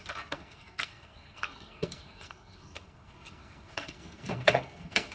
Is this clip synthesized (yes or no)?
yes